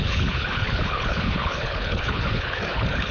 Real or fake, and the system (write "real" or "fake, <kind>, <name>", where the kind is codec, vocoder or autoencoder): fake, codec, HILCodec